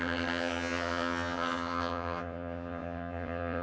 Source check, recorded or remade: remade